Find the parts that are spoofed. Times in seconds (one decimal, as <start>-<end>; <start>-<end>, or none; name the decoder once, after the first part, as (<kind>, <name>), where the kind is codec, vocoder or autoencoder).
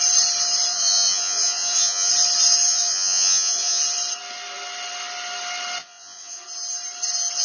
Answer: 0.7-2.1 (vocoder, Vocos); 2.7-3.8; 5.8-6.4